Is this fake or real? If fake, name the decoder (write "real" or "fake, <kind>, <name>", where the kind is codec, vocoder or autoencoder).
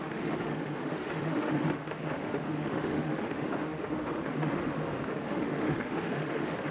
fake, autoencoder, DAC-VAE